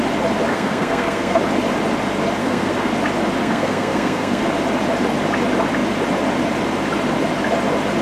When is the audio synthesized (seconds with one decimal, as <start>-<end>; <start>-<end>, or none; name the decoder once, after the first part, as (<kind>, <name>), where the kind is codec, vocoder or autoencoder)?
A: 0.5-1.4 (codec, SNAC); 2.4-2.9; 3.4-4.4